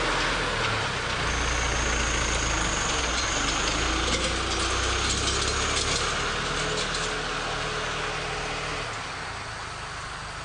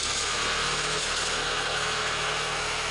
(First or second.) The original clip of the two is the first